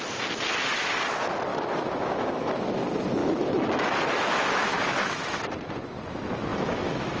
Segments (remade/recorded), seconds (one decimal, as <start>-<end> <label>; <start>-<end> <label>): 0.0-1.5 recorded; 1.5-2.6 remade; 2.6-3.2 recorded; 3.2-5.4 remade; 5.4-6.5 recorded; 6.5-7.2 remade